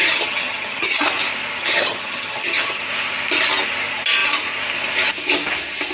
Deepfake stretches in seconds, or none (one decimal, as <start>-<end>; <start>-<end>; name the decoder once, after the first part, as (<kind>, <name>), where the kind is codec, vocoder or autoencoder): 0.0-1.1 (vocoder, HiFi-GAN); 1.6-2.8